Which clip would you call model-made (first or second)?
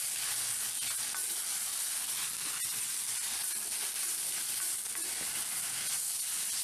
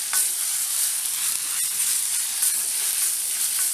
second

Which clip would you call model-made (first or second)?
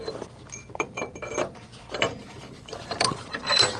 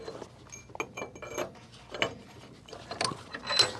first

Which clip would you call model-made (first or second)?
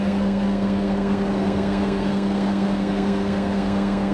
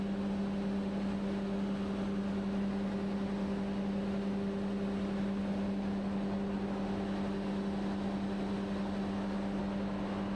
first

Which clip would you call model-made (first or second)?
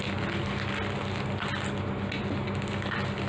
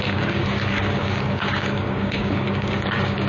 second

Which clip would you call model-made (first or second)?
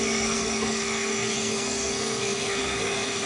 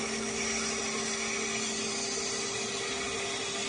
first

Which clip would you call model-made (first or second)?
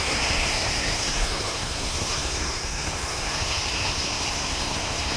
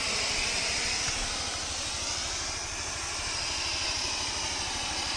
first